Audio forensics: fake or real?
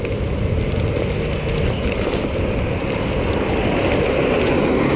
real